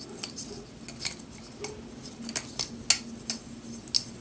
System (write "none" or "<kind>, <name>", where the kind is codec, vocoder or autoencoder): none